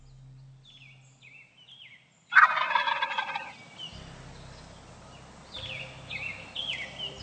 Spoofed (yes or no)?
no